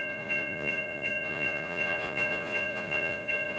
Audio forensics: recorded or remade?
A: remade